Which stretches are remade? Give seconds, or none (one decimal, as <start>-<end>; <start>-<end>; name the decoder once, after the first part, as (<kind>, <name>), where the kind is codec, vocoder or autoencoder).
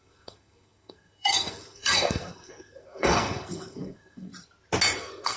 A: 0.0-4.3 (codec, SNAC); 5.0-5.4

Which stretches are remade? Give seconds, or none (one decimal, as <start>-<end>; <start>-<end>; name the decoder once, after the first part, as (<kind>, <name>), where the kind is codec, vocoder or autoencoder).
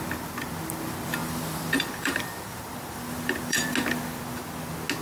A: 1.2-3.7 (vocoder, BigVGAN v2)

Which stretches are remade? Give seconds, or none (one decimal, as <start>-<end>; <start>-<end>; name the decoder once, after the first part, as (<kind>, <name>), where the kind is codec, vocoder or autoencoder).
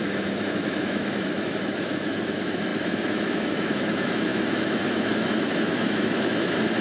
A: 0.0-6.8 (autoencoder, DAC-VAE)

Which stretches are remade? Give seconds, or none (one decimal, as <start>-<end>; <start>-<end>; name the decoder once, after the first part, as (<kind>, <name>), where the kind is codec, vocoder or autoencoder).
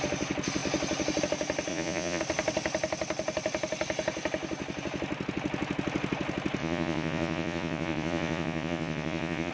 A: 1.7-2.2 (vocoder, Vocos); 6.6-9.5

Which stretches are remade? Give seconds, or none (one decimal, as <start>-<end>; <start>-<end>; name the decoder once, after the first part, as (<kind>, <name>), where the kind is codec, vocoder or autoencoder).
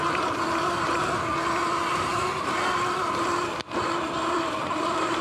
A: 1.8-5.2 (vocoder, BigVGAN v2)